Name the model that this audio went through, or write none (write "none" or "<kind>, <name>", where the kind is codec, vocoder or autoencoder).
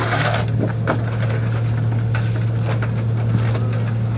none